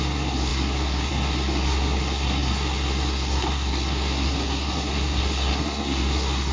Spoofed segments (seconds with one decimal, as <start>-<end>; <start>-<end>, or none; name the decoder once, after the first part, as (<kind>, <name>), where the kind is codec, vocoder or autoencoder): 0.0-6.5 (codec, SNAC)